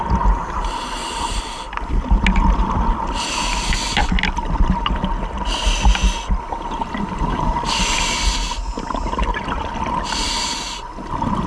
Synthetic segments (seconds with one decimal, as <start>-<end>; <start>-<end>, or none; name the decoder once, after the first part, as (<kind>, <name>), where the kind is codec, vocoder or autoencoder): 1.0-2.0 (vocoder, BigVGAN v2)